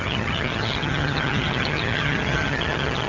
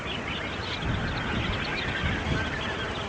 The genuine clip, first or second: second